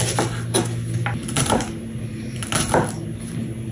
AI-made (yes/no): no